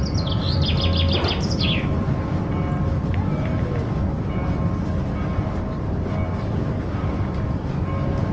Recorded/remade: recorded